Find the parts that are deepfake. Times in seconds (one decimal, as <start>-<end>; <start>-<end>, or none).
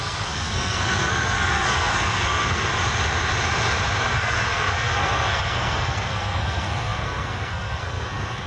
0.0-2.7; 4.0-8.5